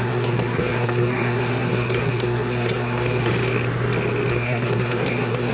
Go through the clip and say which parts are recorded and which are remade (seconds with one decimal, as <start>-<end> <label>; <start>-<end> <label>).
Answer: 0.0-3.3 remade; 3.3-4.3 recorded; 4.3-5.5 remade